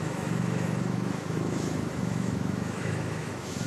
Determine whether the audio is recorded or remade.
remade